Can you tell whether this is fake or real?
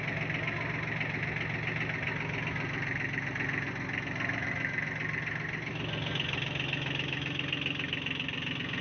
real